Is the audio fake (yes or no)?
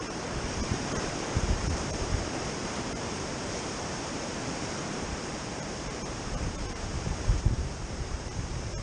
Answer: yes